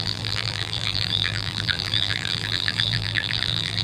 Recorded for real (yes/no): no